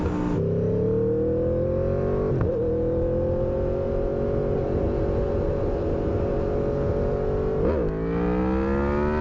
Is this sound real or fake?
real